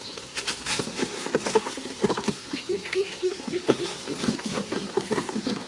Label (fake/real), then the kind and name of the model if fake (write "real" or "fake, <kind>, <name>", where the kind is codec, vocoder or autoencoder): fake, codec, SNAC